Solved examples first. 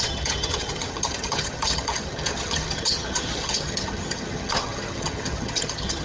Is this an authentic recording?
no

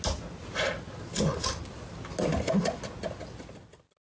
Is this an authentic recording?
yes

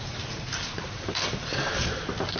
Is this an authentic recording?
no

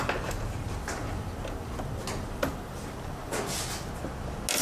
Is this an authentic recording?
yes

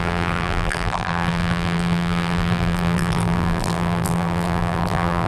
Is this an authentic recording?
no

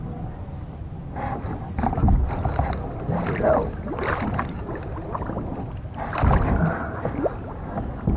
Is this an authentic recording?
yes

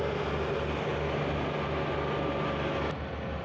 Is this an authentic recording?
yes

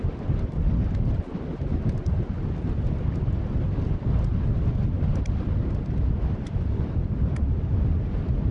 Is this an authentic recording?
yes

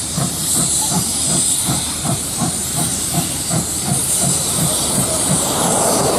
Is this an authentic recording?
no